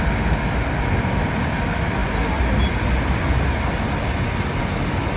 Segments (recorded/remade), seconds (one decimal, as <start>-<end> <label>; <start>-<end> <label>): 0.0-5.2 recorded